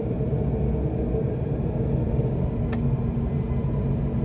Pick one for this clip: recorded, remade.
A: recorded